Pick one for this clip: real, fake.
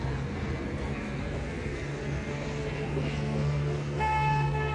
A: fake